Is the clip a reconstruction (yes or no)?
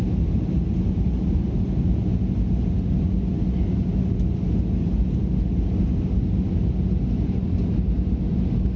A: no